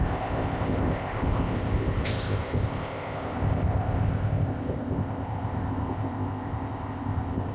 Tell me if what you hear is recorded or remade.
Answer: remade